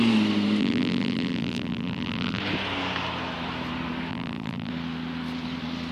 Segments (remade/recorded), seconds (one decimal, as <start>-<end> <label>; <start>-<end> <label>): 0.0-0.6 recorded; 0.6-2.4 remade; 2.4-4.1 recorded; 4.1-4.7 remade; 4.7-5.9 recorded

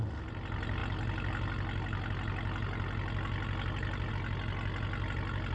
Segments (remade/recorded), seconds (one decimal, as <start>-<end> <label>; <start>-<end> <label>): 0.0-5.5 recorded

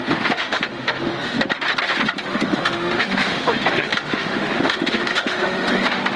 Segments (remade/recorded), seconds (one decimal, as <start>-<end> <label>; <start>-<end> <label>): 0.0-1.1 remade; 1.1-2.3 recorded; 2.3-6.2 remade

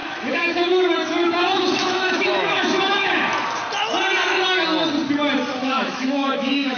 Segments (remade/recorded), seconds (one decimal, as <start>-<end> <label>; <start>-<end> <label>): 0.0-3.3 remade; 3.3-5.6 recorded; 5.6-6.8 remade

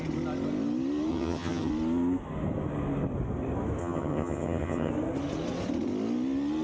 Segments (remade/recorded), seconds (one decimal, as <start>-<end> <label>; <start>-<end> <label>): 0.0-1.1 recorded; 1.1-1.7 remade; 1.7-3.8 recorded; 3.8-4.9 remade; 4.9-6.6 recorded

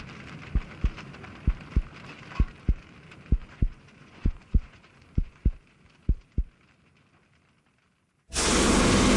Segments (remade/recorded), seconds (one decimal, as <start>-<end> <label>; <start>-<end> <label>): 0.0-3.4 recorded; 3.4-5.4 remade; 5.4-9.2 recorded

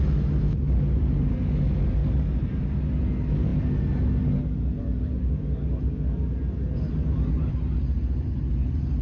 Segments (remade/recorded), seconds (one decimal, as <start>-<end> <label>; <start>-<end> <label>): 0.0-9.0 recorded